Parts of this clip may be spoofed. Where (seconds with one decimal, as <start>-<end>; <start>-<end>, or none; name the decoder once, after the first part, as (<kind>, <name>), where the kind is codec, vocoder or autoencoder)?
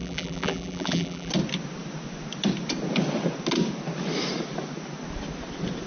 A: 0.0-1.3 (vocoder, BigVGAN v2)